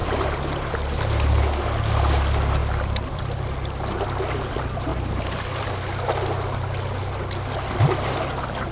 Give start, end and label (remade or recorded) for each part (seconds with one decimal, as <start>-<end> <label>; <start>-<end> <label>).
0.0-1.0 remade; 1.0-2.6 recorded; 2.6-3.2 remade; 3.2-4.9 recorded; 4.9-5.7 remade; 5.7-8.7 recorded